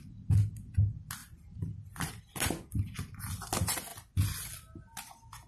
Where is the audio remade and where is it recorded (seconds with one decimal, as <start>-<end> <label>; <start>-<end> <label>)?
0.0-5.5 recorded